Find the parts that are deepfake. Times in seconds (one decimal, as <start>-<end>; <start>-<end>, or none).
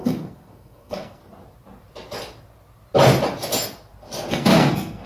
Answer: 0.0-1.2; 4.3-5.1